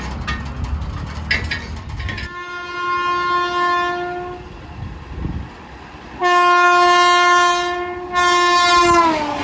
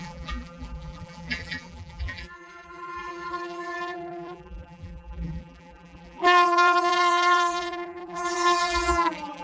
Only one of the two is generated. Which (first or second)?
second